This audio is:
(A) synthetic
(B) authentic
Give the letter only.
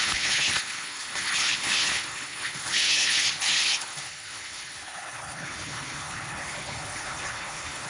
A